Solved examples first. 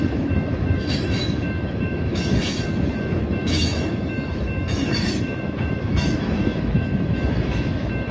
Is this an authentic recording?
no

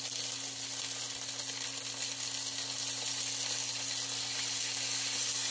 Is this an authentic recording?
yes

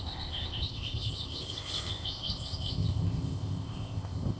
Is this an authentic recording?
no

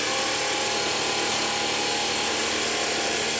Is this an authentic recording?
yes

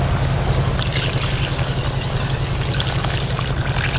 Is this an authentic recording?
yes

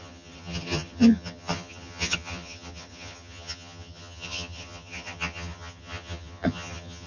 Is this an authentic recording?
no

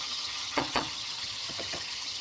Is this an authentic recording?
no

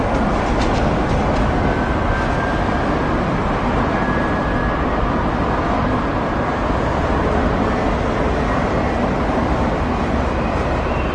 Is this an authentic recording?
yes